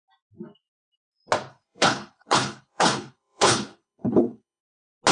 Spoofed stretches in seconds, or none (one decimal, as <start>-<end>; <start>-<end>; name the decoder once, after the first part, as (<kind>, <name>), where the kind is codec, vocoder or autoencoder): 1.5-4.6 (codec, HILCodec)